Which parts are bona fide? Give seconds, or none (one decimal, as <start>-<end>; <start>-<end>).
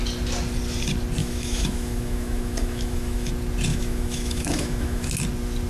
0.0-1.2; 3.3-3.7; 5.1-5.7